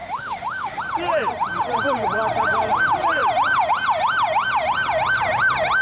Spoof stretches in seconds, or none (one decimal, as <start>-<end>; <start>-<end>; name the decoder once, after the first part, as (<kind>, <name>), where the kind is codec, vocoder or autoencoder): 0.0-0.8 (autoencoder, DAC-VAE)